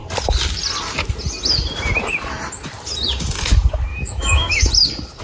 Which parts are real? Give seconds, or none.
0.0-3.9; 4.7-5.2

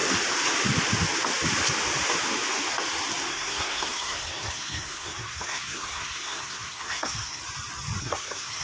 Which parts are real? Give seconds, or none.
0.0-3.3; 7.4-8.0

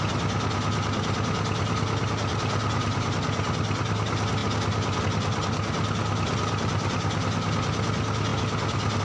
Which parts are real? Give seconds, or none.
0.0-9.0

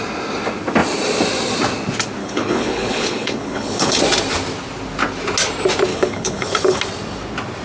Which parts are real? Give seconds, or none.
0.0-2.2; 4.0-5.9; 6.8-7.6

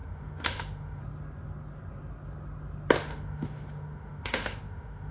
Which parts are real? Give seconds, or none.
1.0-3.0

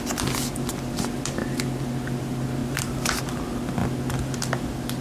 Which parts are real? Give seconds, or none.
0.0-2.6; 3.2-5.0

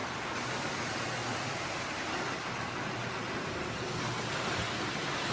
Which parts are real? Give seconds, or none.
0.0-1.3; 4.5-5.3

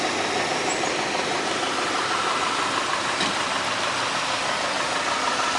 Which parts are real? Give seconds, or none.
0.0-5.6